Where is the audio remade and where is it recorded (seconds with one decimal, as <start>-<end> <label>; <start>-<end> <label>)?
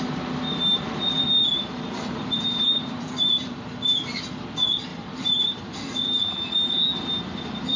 0.0-1.1 recorded; 1.1-4.2 remade; 4.2-4.9 recorded; 4.9-5.6 remade; 5.6-7.8 recorded